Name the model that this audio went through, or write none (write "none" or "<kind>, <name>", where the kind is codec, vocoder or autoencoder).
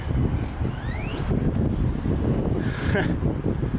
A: none